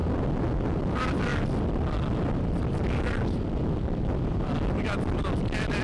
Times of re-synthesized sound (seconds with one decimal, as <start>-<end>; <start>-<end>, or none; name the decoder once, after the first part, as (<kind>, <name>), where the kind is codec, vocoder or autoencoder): 1.3-4.8 (vocoder, BigVGAN v2)